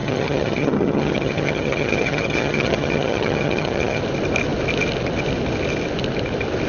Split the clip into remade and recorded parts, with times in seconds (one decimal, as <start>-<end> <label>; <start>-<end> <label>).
0.0-4.0 remade; 4.0-6.7 recorded

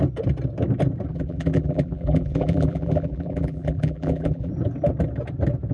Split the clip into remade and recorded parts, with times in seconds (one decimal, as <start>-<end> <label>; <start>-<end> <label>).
0.0-1.1 recorded; 1.1-4.5 remade; 4.5-5.7 recorded